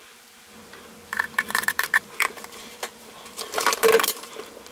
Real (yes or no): no